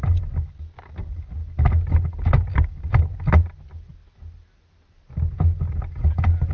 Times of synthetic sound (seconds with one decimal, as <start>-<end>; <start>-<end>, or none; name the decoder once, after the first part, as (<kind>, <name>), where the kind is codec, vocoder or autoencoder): 0.0-0.6 (vocoder, BigVGAN v2)